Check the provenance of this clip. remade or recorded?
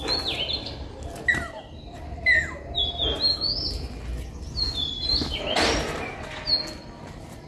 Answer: recorded